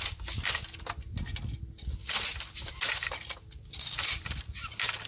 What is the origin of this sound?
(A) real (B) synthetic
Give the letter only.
A